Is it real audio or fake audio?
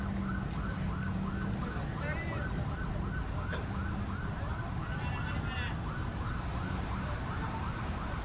real